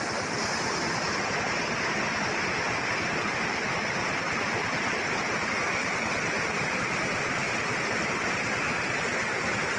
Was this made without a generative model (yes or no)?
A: yes